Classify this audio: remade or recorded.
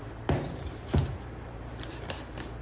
remade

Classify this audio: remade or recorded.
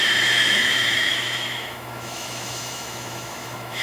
remade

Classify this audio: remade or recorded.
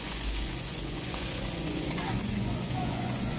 remade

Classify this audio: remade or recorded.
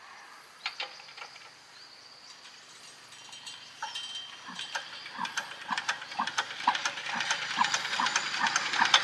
recorded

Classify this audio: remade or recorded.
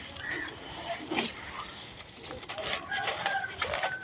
recorded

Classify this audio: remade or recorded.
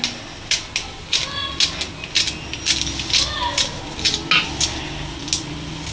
recorded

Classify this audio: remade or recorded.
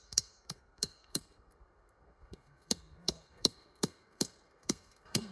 remade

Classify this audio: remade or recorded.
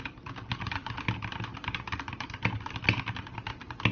recorded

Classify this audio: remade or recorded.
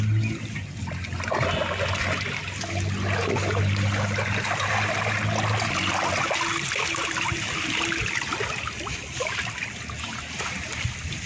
recorded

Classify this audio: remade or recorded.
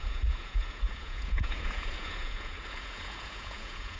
remade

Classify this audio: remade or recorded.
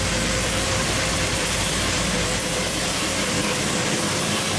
remade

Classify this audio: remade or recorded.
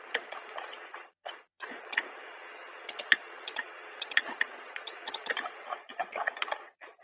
remade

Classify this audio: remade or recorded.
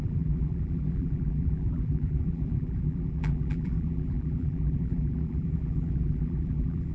remade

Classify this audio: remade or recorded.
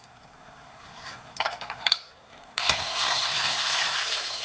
remade